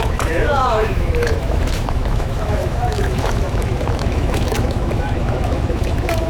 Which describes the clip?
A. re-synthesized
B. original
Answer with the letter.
A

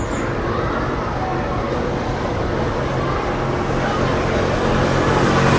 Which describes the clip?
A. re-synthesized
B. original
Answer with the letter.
B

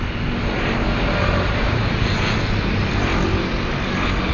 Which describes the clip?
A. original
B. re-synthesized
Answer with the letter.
A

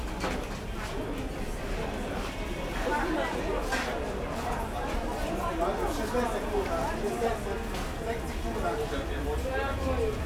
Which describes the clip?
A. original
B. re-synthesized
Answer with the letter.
A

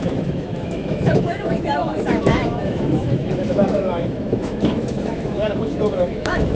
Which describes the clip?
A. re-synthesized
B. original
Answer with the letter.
A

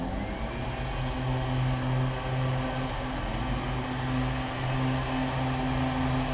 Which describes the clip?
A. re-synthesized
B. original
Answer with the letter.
B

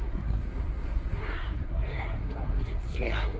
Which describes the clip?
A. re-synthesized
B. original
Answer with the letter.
A